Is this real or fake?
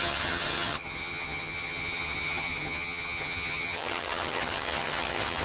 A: fake